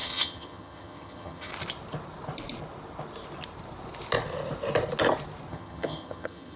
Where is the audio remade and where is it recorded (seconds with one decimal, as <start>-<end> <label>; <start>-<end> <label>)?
0.0-1.5 remade; 1.5-5.5 recorded; 5.5-6.6 remade